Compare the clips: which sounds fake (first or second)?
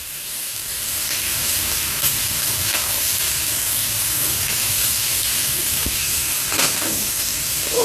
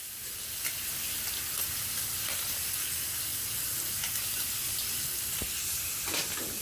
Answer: first